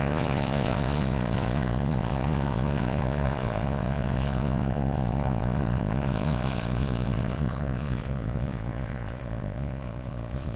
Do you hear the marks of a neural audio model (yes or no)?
yes